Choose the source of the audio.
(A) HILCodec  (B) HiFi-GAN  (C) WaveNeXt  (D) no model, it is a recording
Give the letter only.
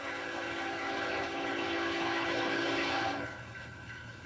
A